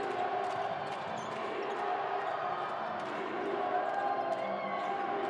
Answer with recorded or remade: recorded